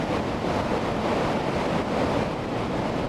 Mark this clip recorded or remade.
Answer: recorded